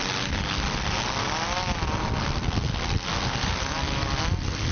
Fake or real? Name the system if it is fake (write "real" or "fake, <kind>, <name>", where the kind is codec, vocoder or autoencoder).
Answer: real